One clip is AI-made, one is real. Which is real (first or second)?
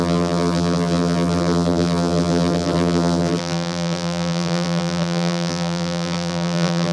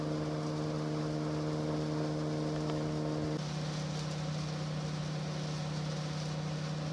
second